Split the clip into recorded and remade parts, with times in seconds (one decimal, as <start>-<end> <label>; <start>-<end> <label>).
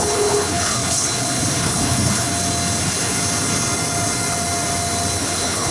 0.0-2.3 remade; 2.3-2.8 recorded; 2.8-3.2 remade; 3.2-5.2 recorded; 5.2-5.7 remade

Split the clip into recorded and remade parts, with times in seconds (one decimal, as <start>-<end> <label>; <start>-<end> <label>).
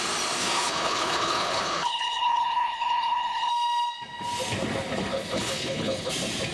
0.0-0.4 recorded; 0.4-3.5 remade; 3.5-5.1 recorded; 5.1-6.1 remade; 6.1-6.5 recorded